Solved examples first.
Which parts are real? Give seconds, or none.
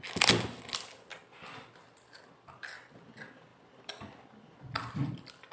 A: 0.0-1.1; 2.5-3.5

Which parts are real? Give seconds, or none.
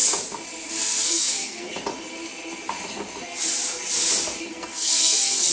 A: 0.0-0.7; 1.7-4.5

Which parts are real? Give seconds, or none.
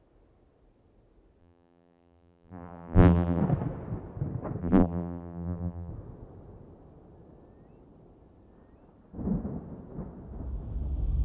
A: 0.0-1.4; 3.4-4.6; 5.9-11.2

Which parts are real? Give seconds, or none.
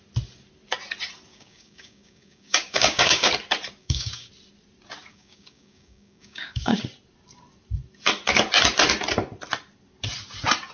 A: 0.0-1.3; 3.3-3.8; 4.3-5.1; 6.8-10.7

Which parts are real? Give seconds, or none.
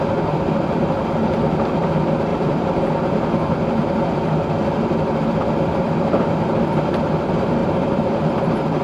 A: 0.0-2.3; 2.9-7.6